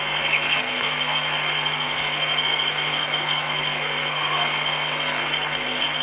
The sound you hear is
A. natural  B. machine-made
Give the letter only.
B